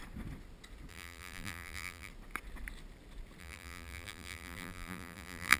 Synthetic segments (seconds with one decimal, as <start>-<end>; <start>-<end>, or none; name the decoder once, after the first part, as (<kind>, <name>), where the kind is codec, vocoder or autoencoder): 0.9-2.1 (vocoder, BigVGAN v2); 3.4-5.6